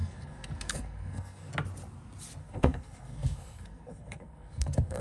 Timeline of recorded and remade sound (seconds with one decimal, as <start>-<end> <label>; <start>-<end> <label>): 0.0-1.5 remade; 1.5-2.4 recorded; 2.4-5.0 remade